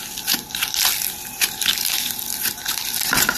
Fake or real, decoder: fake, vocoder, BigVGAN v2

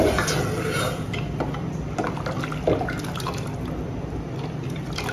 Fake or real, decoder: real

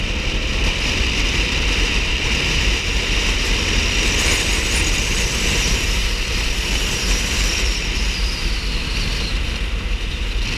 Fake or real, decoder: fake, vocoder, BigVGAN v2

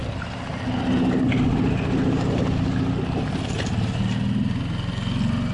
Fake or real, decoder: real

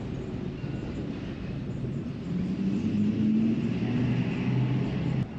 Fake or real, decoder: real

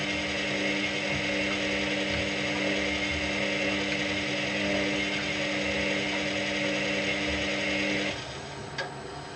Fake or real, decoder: real